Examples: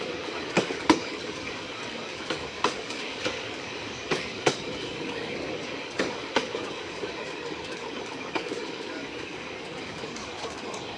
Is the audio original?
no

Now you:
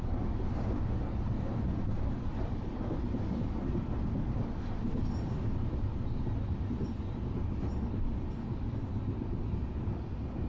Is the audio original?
yes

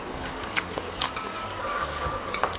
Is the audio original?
no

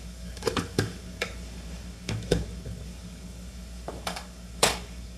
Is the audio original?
no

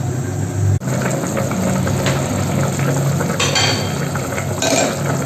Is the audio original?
yes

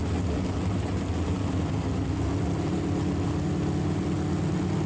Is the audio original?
yes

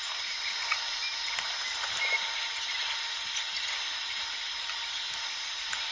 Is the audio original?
yes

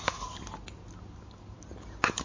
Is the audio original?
yes